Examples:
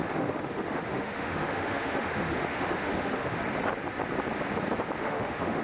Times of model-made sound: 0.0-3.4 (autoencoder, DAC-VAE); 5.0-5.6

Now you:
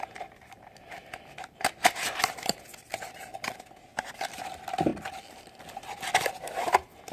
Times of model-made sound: none

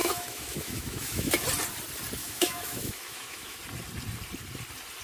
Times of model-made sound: 0.0-1.3 (autoencoder, DAC-VAE); 2.2-3.6

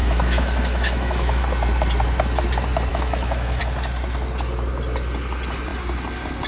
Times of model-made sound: 0.0-1.4 (autoencoder, DAC-VAE); 2.9-3.6

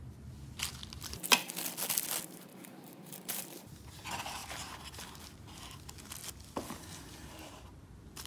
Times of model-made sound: 2.5-3.4 (vocoder, BigVGAN v2); 4.4-5.2

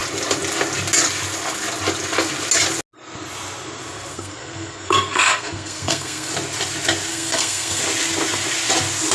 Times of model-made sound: 4.1-6.3 (codec, SNAC); 7.1-7.8

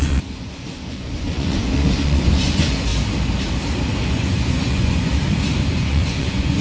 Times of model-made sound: 0.0-2.9 (vocoder, Vocos); 4.1-5.1; 5.7-6.6

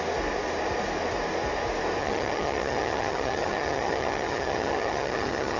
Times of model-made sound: 2.0-5.6 (vocoder, HiFi-GAN)